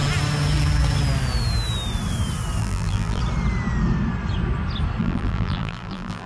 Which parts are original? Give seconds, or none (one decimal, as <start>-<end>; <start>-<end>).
0.0-2.6; 3.2-5.0